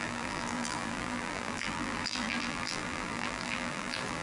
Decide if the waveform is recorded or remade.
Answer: remade